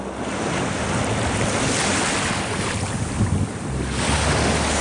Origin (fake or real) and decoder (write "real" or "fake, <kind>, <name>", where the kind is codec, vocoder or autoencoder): real